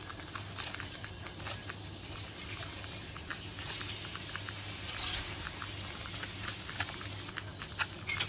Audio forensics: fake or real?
real